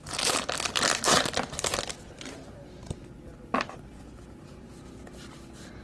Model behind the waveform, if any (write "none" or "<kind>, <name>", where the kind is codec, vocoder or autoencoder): none